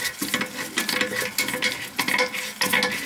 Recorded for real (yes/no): yes